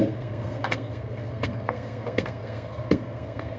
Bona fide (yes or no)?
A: no